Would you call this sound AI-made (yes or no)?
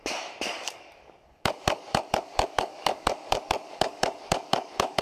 yes